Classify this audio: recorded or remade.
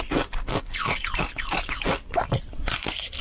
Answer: recorded